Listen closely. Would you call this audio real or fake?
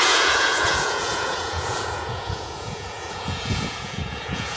fake